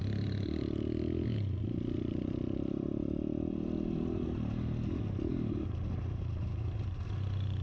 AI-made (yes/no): no